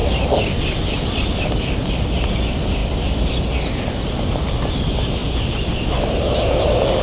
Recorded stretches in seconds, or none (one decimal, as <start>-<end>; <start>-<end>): 0.0-7.0